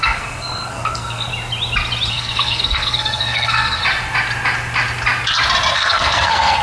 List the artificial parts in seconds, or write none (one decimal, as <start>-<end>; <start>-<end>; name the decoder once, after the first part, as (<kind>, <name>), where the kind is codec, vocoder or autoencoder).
0.0-1.3 (codec, SNAC); 2.1-3.8; 5.7-6.6